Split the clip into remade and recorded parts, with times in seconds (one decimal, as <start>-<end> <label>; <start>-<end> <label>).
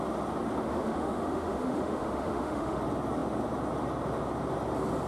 0.0-0.7 recorded; 0.7-2.8 remade; 2.8-5.1 recorded